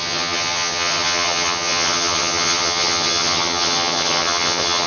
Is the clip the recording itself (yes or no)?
no